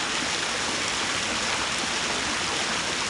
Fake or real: real